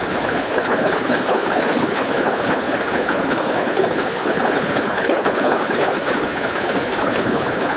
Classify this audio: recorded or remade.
remade